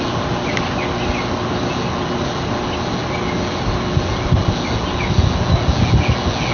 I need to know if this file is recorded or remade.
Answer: recorded